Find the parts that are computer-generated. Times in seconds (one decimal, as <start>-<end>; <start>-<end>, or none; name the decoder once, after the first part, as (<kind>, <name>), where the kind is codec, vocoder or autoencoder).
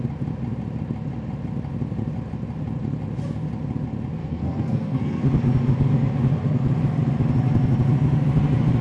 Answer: 4.2-5.2 (codec, SNAC)